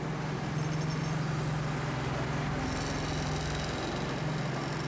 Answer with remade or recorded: recorded